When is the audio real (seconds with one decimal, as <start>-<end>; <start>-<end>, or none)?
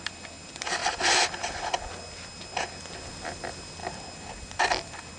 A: 0.0-5.2